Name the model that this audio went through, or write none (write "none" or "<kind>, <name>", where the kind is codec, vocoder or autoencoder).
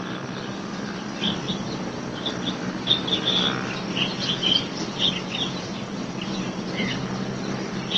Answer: none